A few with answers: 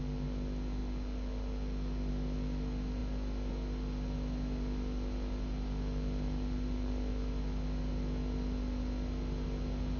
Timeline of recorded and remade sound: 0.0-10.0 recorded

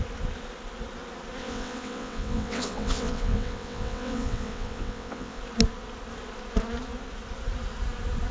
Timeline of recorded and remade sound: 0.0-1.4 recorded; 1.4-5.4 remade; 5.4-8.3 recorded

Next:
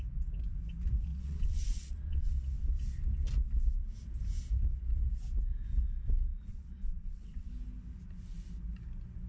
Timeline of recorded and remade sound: 0.0-1.1 recorded; 1.1-2.3 remade; 2.3-6.5 recorded; 6.5-7.5 remade; 7.5-9.3 recorded

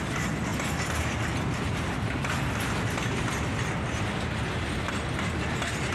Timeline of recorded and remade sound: 0.0-5.9 recorded

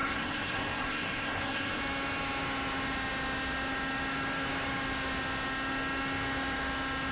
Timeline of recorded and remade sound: 0.0-1.8 remade; 1.8-7.1 recorded